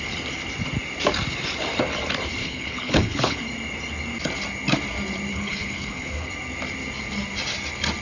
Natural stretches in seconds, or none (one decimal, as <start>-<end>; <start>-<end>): 0.0-2.4; 3.4-5.3; 6.3-8.0